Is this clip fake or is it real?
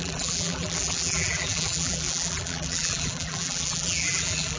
fake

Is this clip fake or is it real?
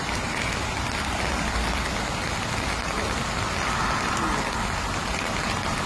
real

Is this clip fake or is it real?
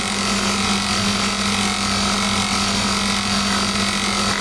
real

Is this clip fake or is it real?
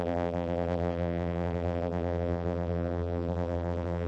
fake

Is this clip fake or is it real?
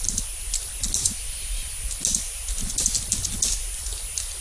real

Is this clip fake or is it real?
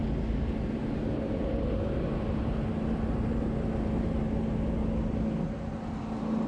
real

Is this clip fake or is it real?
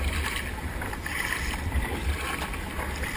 real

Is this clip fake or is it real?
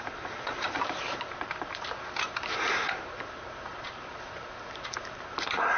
fake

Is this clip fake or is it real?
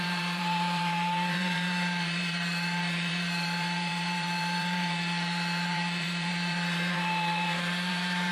fake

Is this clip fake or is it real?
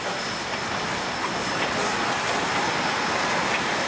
fake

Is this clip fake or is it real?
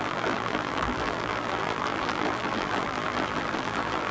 fake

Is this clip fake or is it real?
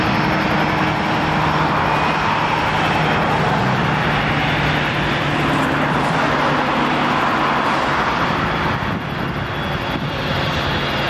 real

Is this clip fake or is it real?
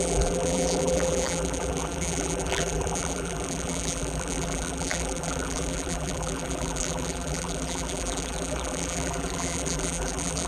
fake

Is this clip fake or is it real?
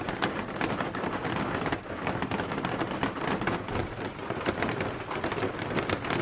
real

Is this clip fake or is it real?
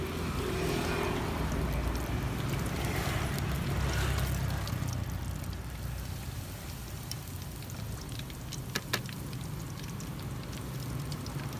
real